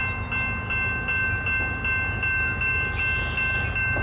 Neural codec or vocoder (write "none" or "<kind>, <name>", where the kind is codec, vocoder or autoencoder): none